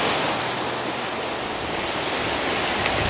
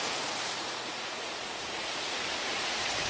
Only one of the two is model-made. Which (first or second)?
second